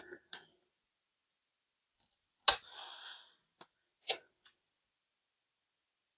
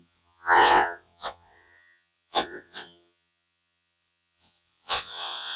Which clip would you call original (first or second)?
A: first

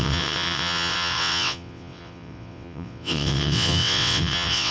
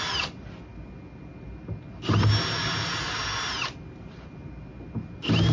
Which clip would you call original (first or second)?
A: second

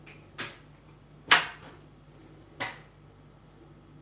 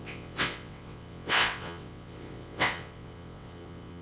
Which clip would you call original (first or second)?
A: first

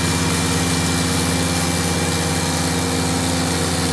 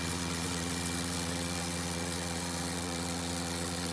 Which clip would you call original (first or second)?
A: first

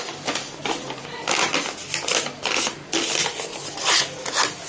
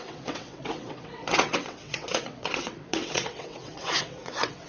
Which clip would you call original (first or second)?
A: first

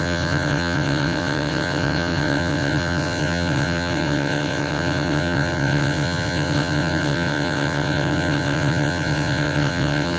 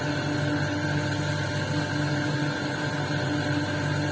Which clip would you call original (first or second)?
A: second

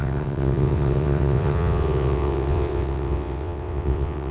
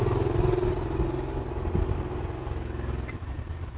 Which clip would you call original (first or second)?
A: second